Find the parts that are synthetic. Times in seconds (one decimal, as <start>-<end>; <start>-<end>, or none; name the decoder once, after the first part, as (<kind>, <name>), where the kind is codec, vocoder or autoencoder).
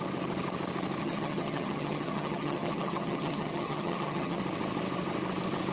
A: 1.0-4.4 (vocoder, HiFi-GAN)